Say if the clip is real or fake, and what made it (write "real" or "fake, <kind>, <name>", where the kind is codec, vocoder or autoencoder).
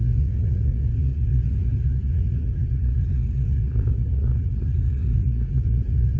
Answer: fake, vocoder, Vocos